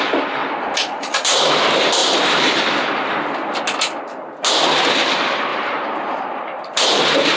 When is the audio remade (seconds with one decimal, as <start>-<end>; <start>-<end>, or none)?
0.4-1.5; 2.0-2.6; 5.5-7.0